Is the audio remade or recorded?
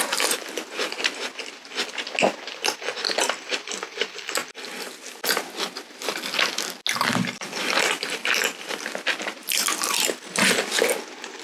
recorded